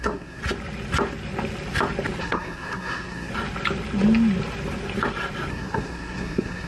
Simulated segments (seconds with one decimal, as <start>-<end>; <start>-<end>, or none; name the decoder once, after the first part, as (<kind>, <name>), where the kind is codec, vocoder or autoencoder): 0.0-0.4 (codec, SNAC); 2.2-3.3; 5.5-6.7